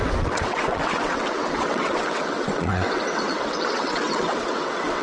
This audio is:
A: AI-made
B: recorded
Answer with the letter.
A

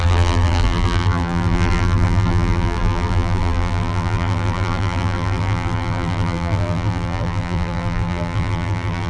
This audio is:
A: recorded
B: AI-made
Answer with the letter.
B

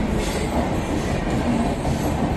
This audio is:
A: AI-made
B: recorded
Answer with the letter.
B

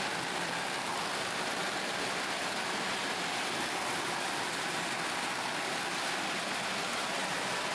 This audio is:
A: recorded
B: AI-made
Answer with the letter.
A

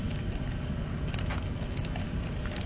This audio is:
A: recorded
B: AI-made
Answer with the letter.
A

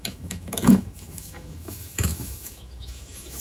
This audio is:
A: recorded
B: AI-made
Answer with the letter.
B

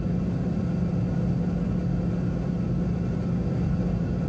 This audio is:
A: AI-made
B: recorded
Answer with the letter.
B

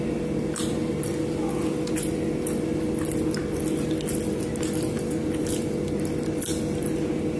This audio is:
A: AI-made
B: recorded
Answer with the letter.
B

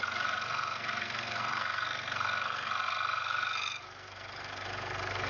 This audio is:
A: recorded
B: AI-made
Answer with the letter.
B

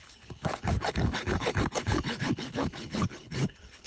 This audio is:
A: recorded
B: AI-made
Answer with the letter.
B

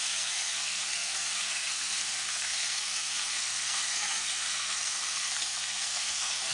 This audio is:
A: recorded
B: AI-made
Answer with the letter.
B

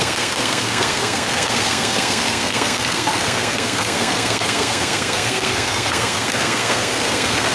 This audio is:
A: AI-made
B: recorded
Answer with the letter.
A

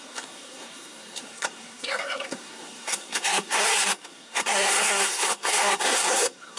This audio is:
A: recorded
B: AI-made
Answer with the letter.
B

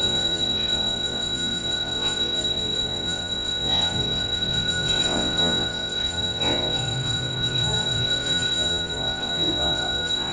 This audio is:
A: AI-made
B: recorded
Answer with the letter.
A